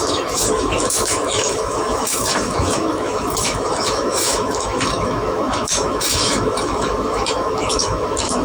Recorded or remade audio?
remade